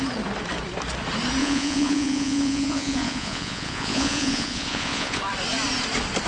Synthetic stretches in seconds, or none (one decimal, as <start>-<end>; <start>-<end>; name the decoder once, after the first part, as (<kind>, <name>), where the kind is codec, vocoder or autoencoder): 1.4-5.2 (vocoder, Vocos)

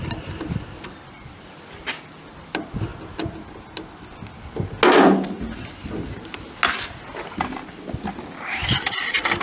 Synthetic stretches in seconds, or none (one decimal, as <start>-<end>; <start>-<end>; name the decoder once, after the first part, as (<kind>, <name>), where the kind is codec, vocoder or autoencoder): none

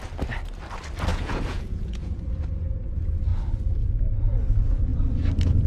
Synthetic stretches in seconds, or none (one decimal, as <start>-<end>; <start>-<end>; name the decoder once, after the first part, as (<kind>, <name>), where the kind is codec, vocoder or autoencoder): 1.1-2.2 (vocoder, Vocos)

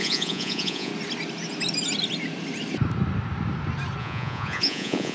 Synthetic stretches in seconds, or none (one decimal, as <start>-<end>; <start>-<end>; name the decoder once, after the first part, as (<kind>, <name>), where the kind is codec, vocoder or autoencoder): 0.0-0.9 (vocoder, Vocos); 4.0-5.1

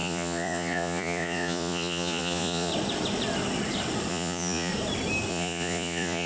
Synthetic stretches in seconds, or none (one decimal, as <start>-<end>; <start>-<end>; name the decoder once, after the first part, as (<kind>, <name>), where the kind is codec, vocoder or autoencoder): 0.0-2.7 (vocoder, Vocos); 4.1-4.7; 5.3-6.3